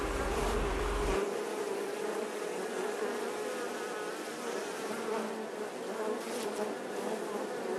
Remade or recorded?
recorded